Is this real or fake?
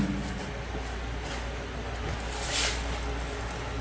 real